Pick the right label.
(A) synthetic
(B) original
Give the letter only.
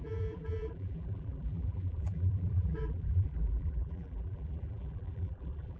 A